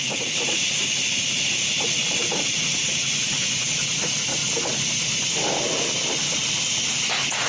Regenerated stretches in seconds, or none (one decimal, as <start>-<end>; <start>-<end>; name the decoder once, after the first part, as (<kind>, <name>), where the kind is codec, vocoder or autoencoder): 0.0-4.4 (vocoder, Vocos); 7.0-7.5